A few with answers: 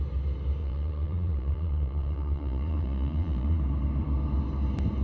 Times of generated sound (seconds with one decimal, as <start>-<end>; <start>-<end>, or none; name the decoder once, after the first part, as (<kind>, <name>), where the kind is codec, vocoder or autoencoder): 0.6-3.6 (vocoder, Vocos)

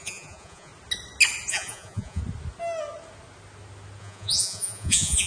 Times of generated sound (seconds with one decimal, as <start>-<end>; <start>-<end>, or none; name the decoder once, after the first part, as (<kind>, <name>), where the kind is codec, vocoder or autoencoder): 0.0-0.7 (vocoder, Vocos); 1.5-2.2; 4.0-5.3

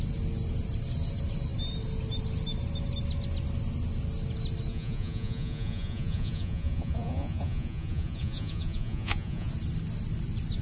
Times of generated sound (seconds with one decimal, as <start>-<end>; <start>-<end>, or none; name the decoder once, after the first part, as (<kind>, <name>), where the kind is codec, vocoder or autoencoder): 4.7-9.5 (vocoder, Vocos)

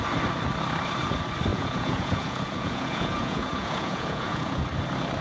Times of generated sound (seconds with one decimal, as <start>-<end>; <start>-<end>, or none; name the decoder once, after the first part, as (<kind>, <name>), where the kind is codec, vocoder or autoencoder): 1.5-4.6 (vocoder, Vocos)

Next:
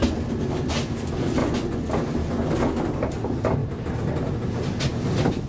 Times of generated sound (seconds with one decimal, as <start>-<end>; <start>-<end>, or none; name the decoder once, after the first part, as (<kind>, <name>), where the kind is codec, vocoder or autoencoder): 1.4-1.9 (vocoder, Vocos)

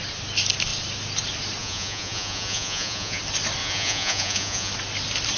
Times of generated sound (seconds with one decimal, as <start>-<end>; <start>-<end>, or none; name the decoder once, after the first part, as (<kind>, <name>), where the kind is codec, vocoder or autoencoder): 1.6-3.2 (vocoder, Vocos); 3.6-4.7

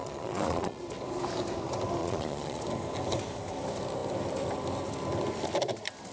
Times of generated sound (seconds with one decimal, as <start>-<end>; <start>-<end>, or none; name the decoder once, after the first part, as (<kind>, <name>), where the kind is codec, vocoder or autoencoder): 0.0-0.8 (vocoder, Vocos); 2.0-2.6